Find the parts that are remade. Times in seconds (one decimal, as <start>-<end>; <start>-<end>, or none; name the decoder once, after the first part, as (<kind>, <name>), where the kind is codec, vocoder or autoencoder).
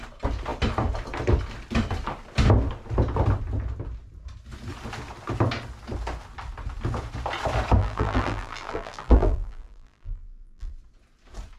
7.8-10.7 (vocoder, BigVGAN v2)